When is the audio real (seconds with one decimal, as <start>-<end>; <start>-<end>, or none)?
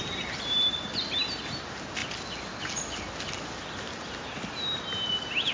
0.0-5.5